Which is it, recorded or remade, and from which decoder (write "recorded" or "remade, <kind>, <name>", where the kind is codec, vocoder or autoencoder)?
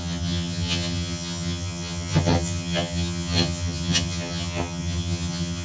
remade, vocoder, HiFi-GAN